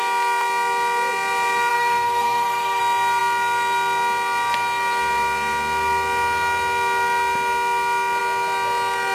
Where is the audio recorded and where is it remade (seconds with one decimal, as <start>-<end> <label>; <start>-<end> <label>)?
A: 0.0-1.7 recorded; 1.7-2.8 remade; 2.8-9.1 recorded